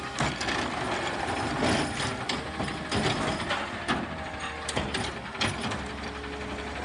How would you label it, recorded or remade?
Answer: recorded